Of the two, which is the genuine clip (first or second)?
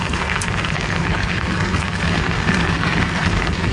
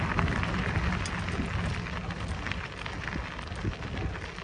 second